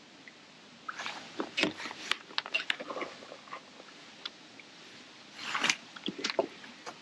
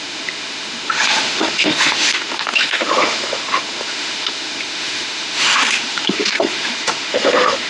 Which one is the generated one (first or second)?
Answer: second